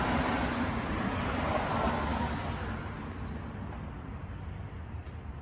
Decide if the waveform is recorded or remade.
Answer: recorded